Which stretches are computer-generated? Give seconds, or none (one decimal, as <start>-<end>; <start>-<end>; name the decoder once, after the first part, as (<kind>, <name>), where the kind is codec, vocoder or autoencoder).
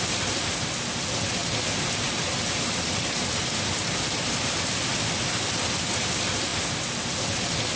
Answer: none